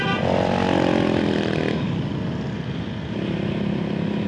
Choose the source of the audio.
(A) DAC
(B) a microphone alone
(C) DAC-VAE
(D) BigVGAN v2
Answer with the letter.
B